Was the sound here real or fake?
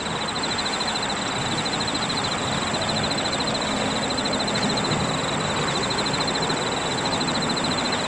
real